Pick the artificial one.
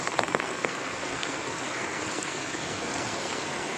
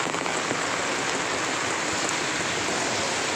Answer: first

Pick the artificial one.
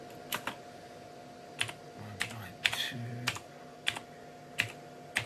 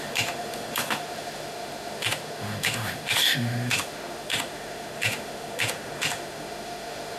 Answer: second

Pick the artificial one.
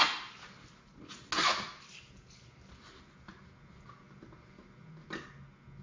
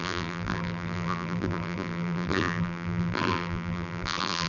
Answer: second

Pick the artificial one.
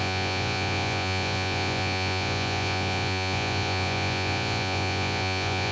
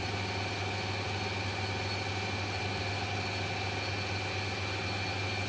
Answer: first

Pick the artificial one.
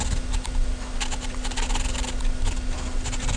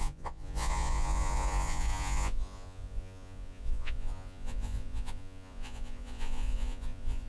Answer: second